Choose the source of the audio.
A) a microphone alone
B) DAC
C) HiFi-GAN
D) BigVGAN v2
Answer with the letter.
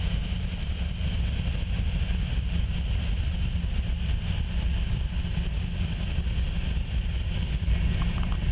A